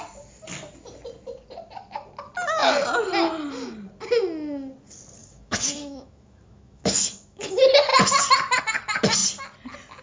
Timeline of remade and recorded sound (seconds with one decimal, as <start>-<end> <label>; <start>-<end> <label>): 0.0-5.2 recorded; 5.2-7.5 remade; 7.5-10.0 recorded